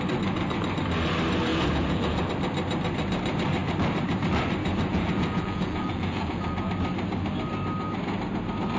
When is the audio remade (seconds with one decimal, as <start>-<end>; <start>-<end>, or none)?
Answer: 1.5-2.3; 4.9-6.7

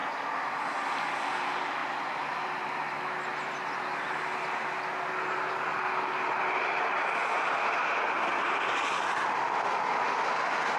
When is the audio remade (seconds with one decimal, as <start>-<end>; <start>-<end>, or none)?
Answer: none

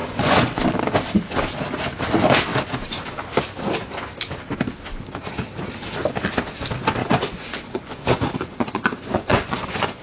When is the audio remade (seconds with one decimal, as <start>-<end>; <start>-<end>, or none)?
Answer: 0.0-0.6; 7.0-10.0

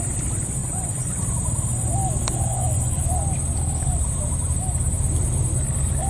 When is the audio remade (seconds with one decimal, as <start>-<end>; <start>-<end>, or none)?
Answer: 0.6-1.2; 2.5-3.0

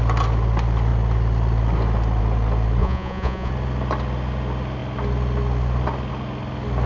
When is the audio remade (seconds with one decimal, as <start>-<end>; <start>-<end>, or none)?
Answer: 2.8-3.5

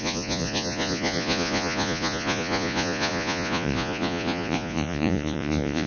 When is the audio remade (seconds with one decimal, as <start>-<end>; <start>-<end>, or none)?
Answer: 0.0-5.9